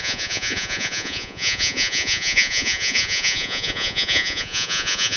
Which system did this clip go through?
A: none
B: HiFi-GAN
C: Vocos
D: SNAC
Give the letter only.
C